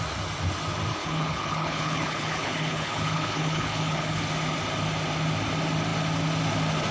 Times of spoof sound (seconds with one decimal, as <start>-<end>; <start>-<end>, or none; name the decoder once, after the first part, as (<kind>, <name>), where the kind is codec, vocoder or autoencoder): 1.0-4.2 (codec, HILCodec)